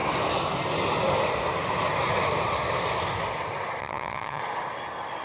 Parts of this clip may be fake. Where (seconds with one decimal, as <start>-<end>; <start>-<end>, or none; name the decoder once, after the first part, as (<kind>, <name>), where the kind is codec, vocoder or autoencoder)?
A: 3.8-4.4 (vocoder, HiFi-GAN)